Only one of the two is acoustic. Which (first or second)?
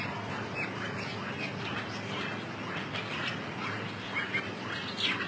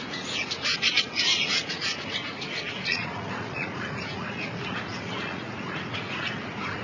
first